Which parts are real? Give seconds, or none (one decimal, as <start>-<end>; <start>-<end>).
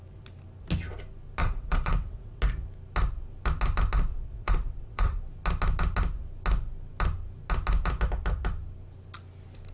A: 0.0-1.4; 2.4-4.1; 5.2-9.7